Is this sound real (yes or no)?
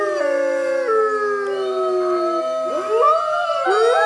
yes